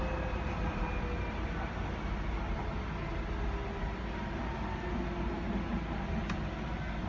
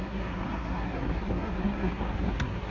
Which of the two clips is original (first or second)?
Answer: first